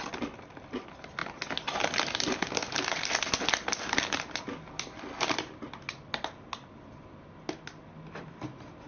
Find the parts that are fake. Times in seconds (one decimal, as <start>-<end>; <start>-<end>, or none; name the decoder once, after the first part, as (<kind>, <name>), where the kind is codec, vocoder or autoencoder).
none